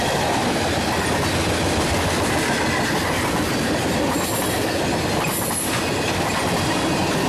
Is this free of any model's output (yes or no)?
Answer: yes